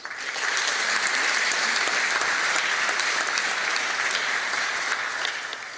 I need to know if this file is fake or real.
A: real